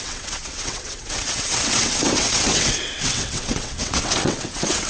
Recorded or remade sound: remade